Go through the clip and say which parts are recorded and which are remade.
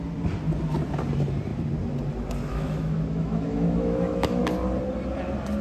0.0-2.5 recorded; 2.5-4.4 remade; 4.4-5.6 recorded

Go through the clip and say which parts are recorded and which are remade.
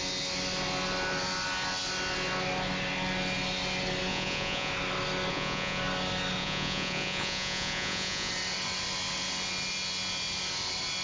0.0-4.1 recorded; 4.1-4.7 remade; 4.7-5.3 recorded; 5.3-5.8 remade; 5.8-6.4 recorded; 6.4-8.3 remade; 8.3-11.0 recorded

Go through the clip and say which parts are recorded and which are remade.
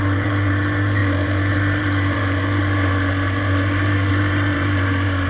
0.0-5.3 remade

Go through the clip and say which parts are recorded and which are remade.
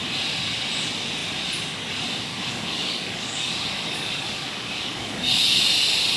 0.0-2.3 recorded; 2.3-5.6 remade; 5.6-6.2 recorded